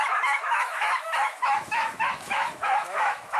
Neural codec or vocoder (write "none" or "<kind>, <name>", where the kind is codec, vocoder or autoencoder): autoencoder, DAC-VAE